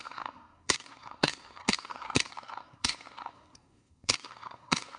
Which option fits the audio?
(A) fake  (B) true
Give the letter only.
A